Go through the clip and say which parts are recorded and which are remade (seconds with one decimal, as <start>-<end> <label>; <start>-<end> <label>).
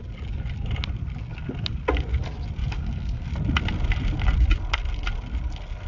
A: 0.0-2.6 recorded; 2.6-3.3 remade; 3.3-5.9 recorded